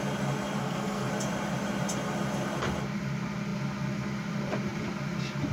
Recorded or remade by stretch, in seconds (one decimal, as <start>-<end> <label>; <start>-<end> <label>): 0.0-0.6 recorded; 0.6-1.1 remade; 1.1-5.5 recorded